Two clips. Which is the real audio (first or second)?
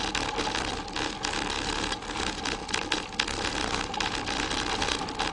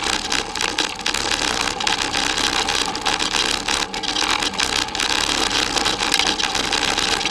second